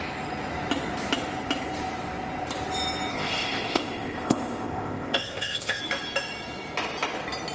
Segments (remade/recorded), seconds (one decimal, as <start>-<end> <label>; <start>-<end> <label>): 0.0-3.1 recorded; 3.1-5.8 remade; 5.8-7.5 recorded